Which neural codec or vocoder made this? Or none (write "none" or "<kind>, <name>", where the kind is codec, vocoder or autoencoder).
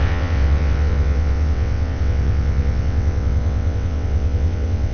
vocoder, WaveNeXt